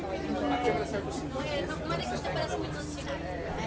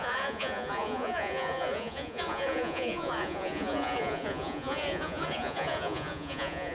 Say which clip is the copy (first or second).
second